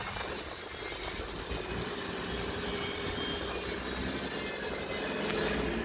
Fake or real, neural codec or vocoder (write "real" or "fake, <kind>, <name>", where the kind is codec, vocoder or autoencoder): real